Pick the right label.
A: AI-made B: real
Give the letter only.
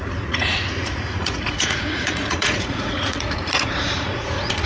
A